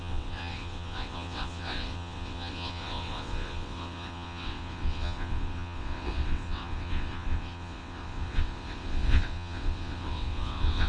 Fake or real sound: fake